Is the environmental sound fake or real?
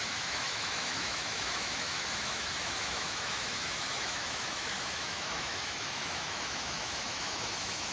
fake